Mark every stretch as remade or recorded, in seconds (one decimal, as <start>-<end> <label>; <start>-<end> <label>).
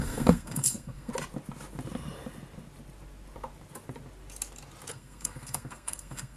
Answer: 0.0-1.1 remade; 1.1-4.9 recorded; 4.9-6.4 remade